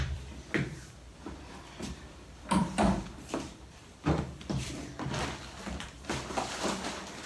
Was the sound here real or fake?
fake